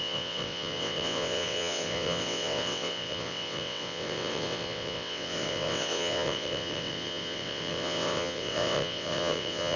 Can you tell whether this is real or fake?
fake